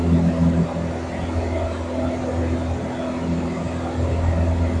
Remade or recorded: recorded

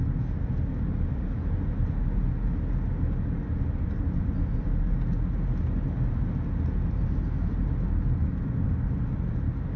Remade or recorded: recorded